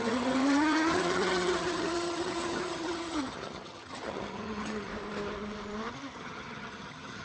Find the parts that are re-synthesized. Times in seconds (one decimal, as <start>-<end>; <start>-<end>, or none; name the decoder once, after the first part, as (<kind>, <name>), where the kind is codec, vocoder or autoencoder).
0.0-4.9 (vocoder, HiFi-GAN); 5.9-7.2